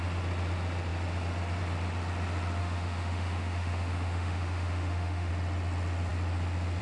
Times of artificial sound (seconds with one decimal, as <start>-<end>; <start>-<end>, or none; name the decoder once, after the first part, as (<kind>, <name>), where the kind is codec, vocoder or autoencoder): 2.6-5.3 (autoencoder, DAC-VAE)